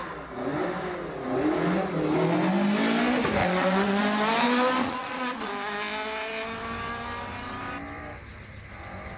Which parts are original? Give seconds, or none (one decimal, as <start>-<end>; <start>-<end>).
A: 0.0-3.4; 4.0-4.8; 5.5-9.2